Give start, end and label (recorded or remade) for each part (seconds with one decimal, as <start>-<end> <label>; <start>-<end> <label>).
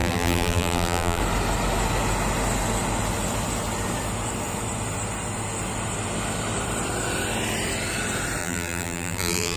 0.0-1.2 remade; 1.2-8.4 recorded; 8.4-9.6 remade